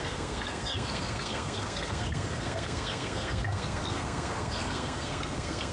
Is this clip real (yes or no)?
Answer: no